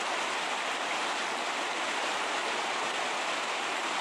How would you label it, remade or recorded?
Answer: recorded